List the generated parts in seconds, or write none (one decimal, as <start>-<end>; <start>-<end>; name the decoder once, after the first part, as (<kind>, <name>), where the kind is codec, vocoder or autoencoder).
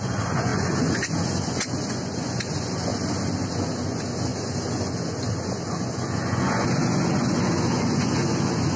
0.0-2.9 (vocoder, Vocos); 3.5-8.8